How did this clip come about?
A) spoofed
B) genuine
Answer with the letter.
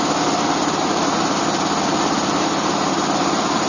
B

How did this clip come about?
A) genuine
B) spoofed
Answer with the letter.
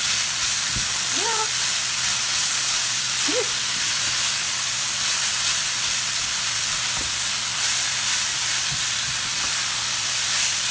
A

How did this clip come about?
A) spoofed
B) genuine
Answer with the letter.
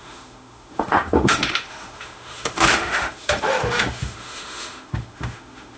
A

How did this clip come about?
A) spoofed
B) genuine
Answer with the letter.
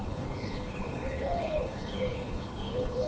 A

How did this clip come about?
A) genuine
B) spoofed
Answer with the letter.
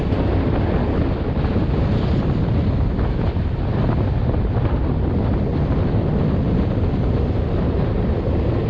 A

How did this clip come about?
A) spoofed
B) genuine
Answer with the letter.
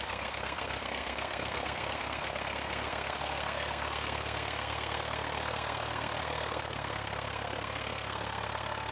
A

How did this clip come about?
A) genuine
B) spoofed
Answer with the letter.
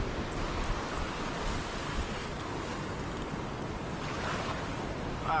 A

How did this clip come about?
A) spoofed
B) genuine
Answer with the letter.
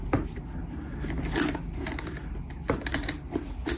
B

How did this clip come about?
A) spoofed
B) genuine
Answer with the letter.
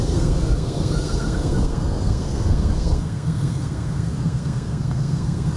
A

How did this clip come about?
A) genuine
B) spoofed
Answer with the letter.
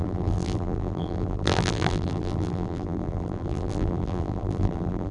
B